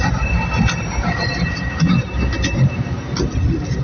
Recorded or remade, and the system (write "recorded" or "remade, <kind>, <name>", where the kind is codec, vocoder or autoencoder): recorded